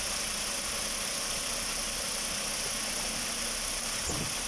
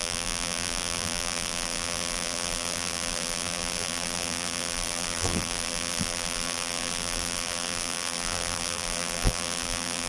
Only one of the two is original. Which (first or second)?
first